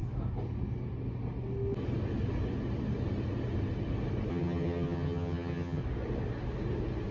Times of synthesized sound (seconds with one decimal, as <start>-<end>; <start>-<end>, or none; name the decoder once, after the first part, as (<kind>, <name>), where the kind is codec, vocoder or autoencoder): 4.3-5.8 (vocoder, HiFi-GAN)